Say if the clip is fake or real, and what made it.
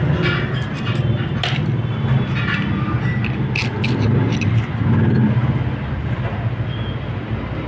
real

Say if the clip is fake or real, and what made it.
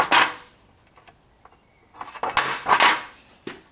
real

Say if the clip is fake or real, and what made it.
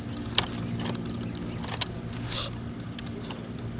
real